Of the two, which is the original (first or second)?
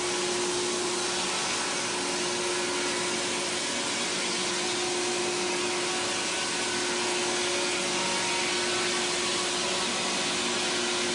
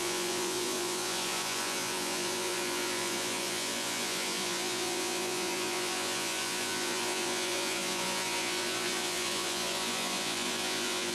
first